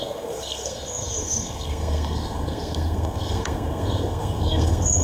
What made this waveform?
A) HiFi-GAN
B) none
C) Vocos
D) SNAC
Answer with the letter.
D